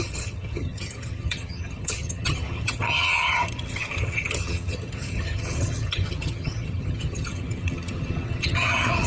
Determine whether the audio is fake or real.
fake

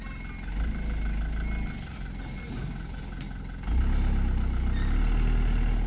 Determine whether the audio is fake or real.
real